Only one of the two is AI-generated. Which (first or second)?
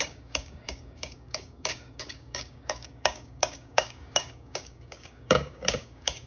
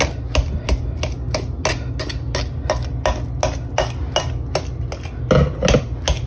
first